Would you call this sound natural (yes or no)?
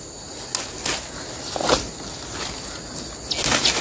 yes